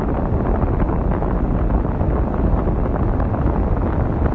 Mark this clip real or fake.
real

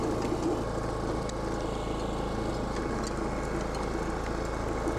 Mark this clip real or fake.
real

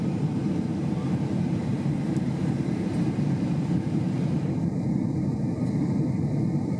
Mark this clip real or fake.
fake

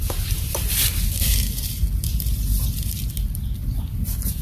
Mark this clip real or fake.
fake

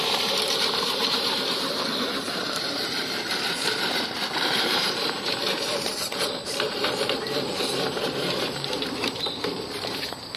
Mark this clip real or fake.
fake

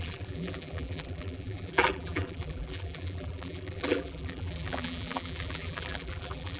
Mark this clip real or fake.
fake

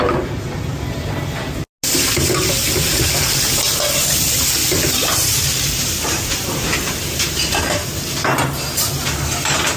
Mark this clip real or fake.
real